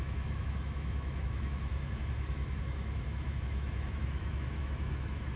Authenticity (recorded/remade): remade